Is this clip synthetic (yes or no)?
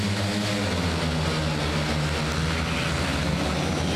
no